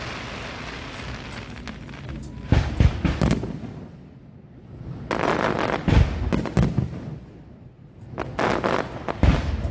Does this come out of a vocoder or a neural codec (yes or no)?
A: no